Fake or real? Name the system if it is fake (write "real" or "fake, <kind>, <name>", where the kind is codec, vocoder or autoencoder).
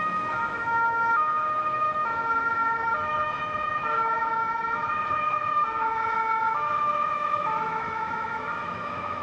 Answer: fake, autoencoder, DAC-VAE